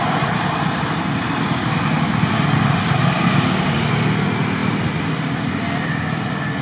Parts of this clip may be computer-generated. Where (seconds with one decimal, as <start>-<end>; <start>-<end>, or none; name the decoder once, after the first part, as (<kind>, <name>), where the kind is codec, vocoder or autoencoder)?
3.3-3.8 (codec, DAC)